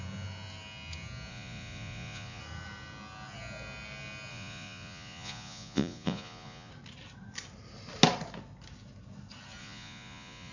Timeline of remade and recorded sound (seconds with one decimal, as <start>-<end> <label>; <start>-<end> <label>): 0.0-1.3 recorded; 1.3-2.4 remade; 2.4-4.3 recorded; 4.3-6.7 remade; 6.7-9.6 recorded; 9.6-10.5 remade

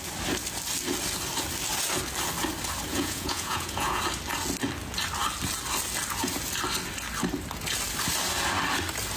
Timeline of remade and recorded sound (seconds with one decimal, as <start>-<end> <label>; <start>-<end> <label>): 0.0-2.9 recorded; 2.9-4.0 remade; 4.0-9.2 recorded